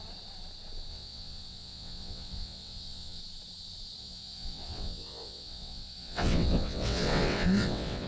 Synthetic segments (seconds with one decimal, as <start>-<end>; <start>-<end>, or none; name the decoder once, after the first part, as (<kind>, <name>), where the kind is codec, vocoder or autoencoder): 0.9-3.2 (vocoder, WaveNeXt); 4.0-8.1